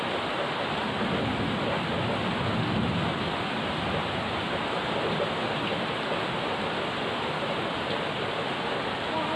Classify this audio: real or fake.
real